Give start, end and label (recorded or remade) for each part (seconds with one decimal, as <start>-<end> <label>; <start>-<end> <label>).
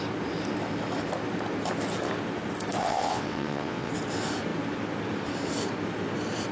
0.0-2.8 recorded; 2.8-3.9 remade; 3.9-6.5 recorded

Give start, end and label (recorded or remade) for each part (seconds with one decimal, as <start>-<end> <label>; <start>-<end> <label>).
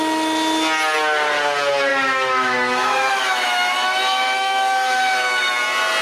0.0-1.9 recorded; 1.9-5.5 remade; 5.5-6.0 recorded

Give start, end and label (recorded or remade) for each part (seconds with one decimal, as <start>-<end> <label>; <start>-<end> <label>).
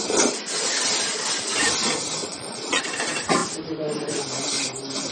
0.0-2.2 recorded; 2.2-2.8 remade; 2.8-5.1 recorded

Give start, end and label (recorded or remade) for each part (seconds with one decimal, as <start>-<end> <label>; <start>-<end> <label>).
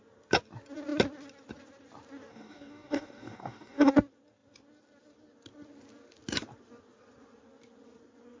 0.0-2.3 recorded; 2.3-3.9 remade; 3.9-8.4 recorded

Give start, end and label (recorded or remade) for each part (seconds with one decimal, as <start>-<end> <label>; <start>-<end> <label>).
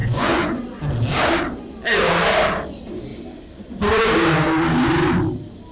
0.0-0.6 remade; 0.6-5.7 recorded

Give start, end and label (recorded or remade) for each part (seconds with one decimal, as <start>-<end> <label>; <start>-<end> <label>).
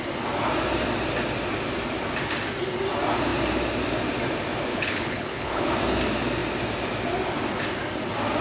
0.0-4.7 recorded; 4.7-5.7 remade; 5.7-8.4 recorded